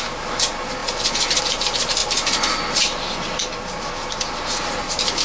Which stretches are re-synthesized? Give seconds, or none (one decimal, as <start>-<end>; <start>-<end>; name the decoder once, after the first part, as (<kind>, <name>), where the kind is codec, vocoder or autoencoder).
none